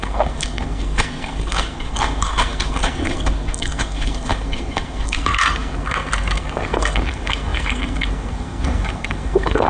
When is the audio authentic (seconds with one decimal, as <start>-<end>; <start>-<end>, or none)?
none